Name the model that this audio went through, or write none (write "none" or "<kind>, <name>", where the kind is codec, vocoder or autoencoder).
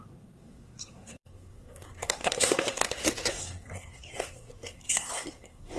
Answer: codec, SNAC